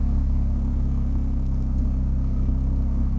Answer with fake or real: fake